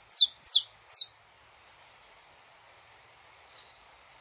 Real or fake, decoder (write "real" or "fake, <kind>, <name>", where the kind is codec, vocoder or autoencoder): real